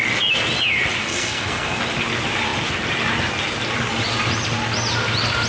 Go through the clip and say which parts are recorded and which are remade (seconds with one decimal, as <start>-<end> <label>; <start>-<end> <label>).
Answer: 0.0-1.0 recorded; 1.0-1.8 remade; 1.8-5.5 recorded